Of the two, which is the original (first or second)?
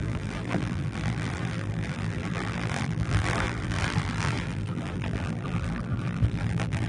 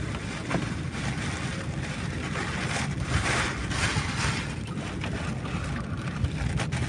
second